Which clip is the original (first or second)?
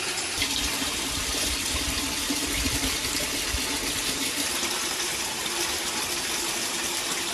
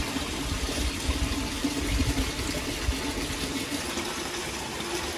second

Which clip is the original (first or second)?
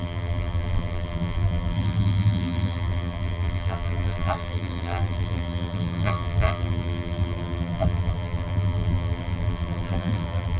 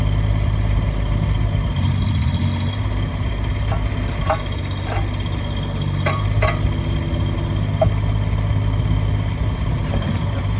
second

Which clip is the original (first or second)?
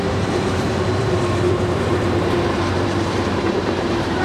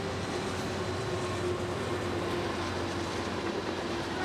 second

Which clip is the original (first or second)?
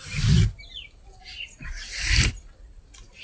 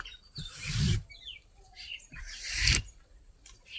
first